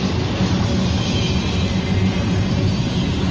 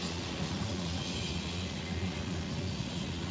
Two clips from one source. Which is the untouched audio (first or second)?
first